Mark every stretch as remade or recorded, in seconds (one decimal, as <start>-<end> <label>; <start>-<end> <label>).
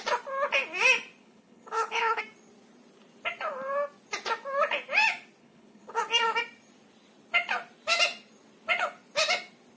0.0-1.2 recorded; 1.2-2.2 remade; 2.2-5.4 recorded; 5.4-6.0 remade; 6.0-9.8 recorded